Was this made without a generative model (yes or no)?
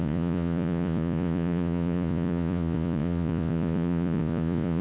no